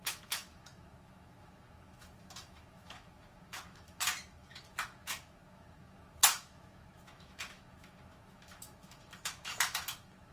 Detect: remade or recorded remade